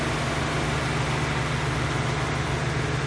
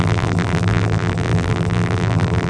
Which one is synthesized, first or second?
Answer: second